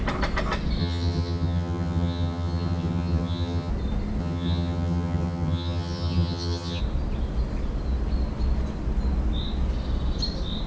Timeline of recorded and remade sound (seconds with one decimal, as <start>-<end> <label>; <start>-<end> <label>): 0.0-0.8 recorded; 0.8-3.7 remade; 3.7-4.2 recorded; 4.2-6.8 remade; 6.8-10.7 recorded